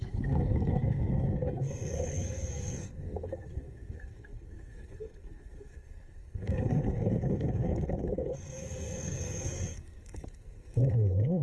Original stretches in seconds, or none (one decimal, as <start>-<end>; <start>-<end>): none